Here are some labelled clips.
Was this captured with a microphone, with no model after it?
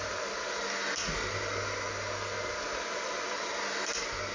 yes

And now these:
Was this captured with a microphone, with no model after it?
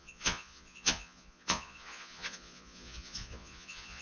no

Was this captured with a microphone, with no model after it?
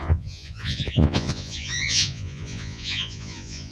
no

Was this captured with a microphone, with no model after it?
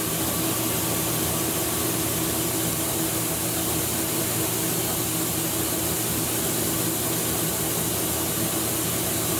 yes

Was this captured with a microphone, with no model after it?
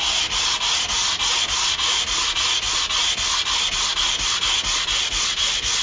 yes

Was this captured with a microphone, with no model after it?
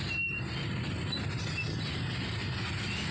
yes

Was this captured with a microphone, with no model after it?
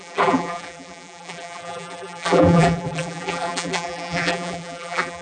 no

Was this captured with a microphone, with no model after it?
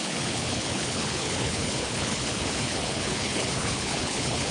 no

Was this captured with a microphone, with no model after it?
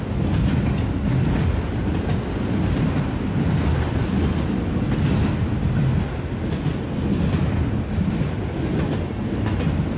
yes